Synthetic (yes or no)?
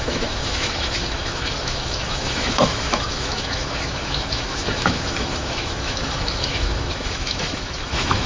yes